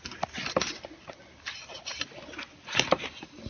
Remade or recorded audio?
recorded